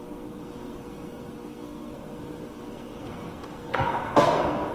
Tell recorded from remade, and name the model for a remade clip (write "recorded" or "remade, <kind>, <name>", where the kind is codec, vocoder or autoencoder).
remade, codec, SNAC